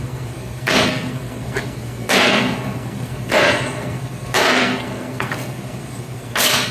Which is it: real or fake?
fake